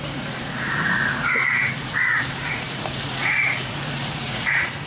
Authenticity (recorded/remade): remade